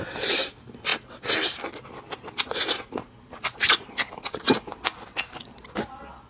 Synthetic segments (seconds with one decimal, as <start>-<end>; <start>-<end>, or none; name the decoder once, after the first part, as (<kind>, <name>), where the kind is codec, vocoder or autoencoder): none